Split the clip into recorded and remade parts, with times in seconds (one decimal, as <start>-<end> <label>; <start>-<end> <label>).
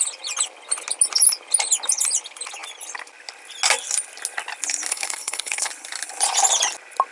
0.0-4.9 recorded; 4.9-5.7 remade; 5.7-7.1 recorded